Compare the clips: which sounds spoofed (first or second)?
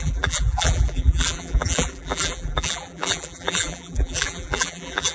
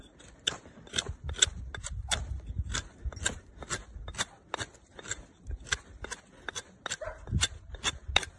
first